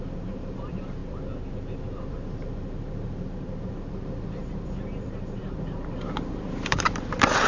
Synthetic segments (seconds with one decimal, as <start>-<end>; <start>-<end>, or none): 0.0-1.0; 2.1-7.5